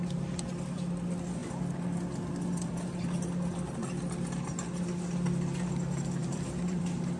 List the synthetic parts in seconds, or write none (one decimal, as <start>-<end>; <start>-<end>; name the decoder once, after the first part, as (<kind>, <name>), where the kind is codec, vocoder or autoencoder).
6.2-6.8 (vocoder, BigVGAN v2)